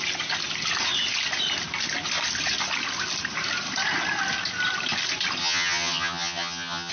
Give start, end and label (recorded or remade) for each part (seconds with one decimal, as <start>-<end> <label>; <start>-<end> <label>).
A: 0.0-5.4 recorded; 5.4-6.9 remade